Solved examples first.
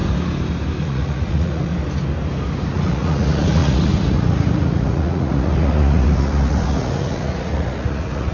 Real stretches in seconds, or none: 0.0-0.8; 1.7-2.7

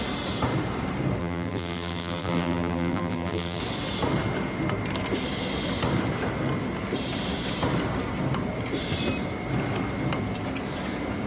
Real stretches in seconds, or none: 0.0-1.2; 3.6-11.3

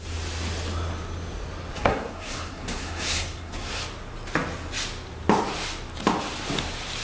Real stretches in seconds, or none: 0.0-1.7; 3.8-7.0

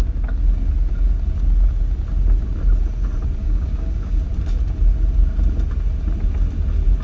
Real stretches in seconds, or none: 0.0-3.4; 4.2-7.0

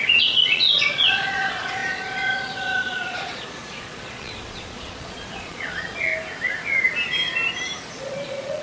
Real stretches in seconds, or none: 6.1-7.9